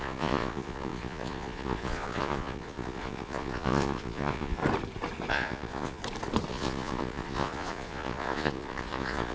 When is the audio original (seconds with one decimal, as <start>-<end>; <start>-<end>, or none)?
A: 4.6-5.3; 6.0-6.5